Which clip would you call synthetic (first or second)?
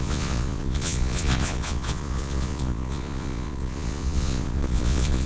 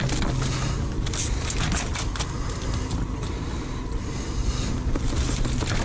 first